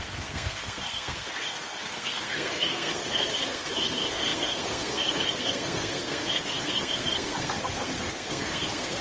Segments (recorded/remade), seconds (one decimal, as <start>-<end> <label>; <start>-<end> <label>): 0.0-9.0 remade